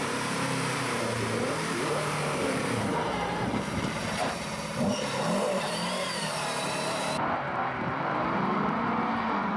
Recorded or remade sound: remade